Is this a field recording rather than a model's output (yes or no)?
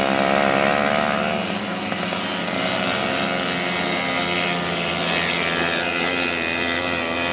yes